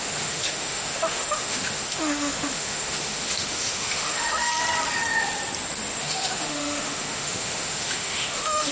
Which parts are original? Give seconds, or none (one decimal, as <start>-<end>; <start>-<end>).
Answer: 4.5-6.0